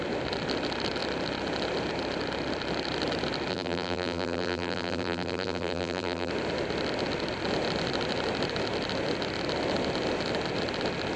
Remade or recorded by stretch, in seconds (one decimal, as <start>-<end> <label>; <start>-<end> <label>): 0.0-3.5 recorded; 3.5-6.3 remade; 6.3-11.2 recorded